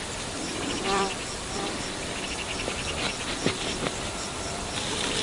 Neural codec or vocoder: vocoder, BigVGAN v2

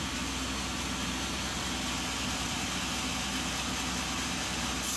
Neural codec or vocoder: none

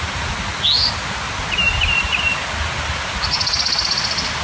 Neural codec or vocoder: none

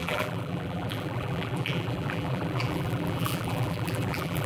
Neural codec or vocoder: vocoder, BigVGAN v2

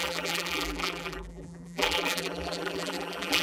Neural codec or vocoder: vocoder, BigVGAN v2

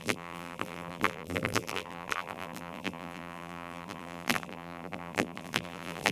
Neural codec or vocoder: vocoder, BigVGAN v2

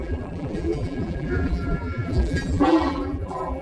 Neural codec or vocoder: vocoder, BigVGAN v2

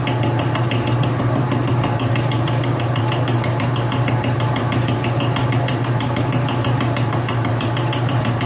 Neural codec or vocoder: vocoder, BigVGAN v2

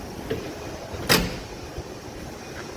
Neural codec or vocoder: none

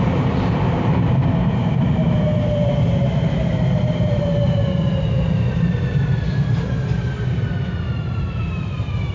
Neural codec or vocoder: vocoder, BigVGAN v2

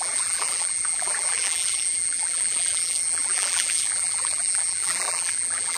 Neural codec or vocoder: vocoder, BigVGAN v2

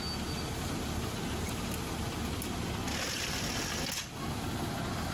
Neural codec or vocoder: none